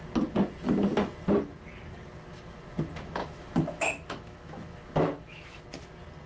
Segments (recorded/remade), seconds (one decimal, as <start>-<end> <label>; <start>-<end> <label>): 0.0-3.2 recorded; 3.2-5.6 remade; 5.6-6.3 recorded